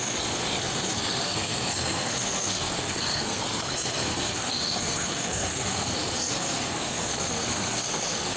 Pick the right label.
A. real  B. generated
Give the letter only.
B